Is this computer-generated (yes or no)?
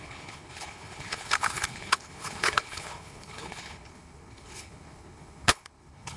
yes